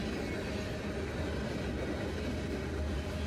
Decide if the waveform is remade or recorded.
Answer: recorded